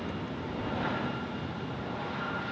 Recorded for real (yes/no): yes